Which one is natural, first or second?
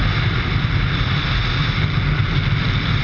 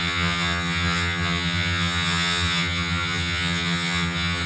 first